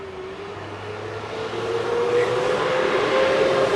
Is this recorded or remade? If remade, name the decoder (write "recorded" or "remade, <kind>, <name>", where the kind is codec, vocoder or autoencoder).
recorded